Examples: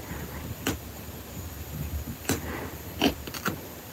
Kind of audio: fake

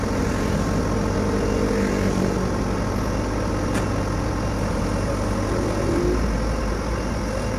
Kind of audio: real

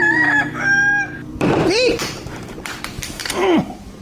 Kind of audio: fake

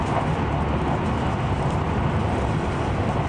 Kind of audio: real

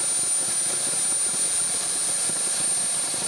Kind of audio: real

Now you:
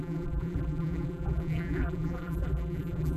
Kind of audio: fake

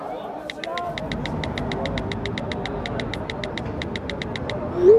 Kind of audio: real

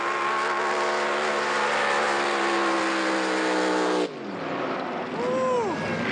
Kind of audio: real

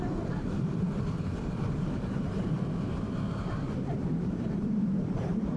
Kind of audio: fake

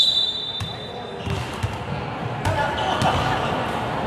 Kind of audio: real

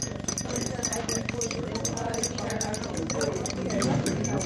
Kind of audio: real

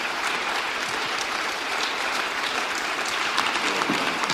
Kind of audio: fake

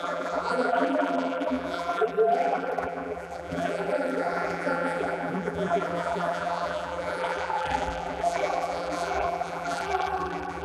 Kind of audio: fake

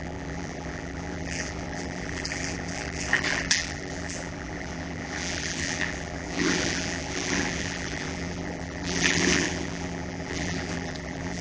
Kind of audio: fake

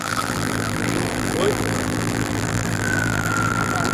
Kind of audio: fake